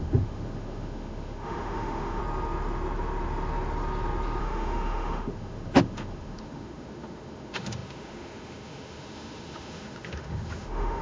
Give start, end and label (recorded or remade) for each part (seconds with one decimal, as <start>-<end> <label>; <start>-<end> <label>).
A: 0.0-2.2 remade; 2.2-4.4 recorded; 4.4-11.0 remade